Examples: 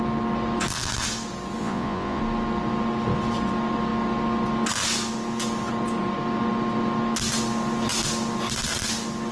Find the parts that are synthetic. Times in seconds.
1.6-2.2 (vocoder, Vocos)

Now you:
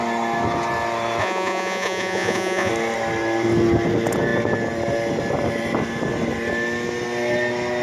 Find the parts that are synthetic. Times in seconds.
1.2-2.7 (vocoder, Vocos)